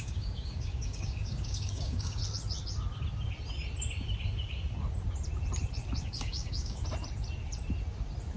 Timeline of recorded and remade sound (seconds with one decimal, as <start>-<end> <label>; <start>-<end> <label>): 0.0-2.2 remade; 2.2-6.0 recorded; 6.0-6.8 remade; 6.8-8.4 recorded